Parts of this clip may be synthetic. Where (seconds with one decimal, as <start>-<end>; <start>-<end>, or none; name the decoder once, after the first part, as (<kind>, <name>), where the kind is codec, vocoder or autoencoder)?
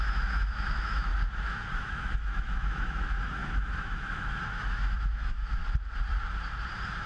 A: 0.0-1.1 (autoencoder, DAC-VAE); 1.7-5.6